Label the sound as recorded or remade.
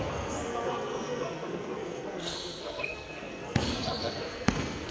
remade